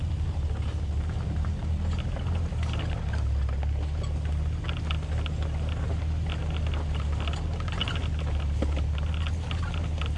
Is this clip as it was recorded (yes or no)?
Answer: yes